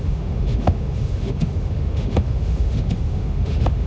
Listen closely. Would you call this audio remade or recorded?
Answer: remade